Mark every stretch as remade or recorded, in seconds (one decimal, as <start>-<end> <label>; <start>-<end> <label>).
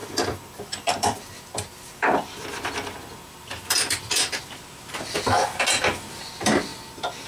0.0-4.4 remade; 4.4-7.3 recorded